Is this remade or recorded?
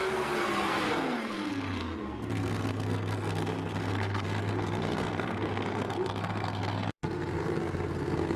remade